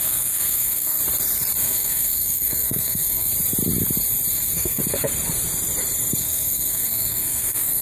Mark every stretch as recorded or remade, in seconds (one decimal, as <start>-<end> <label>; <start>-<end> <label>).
0.0-1.0 remade; 1.0-1.6 recorded; 1.6-3.3 remade; 3.3-4.3 recorded; 4.3-4.8 remade; 4.8-6.2 recorded; 6.2-7.8 remade